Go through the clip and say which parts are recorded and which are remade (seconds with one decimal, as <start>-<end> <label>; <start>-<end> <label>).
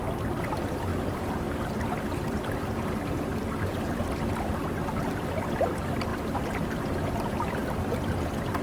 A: 0.0-8.6 recorded